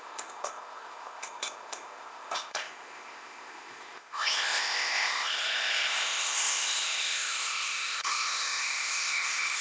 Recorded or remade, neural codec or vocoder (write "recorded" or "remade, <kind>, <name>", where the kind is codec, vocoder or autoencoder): remade, codec, ZipCodec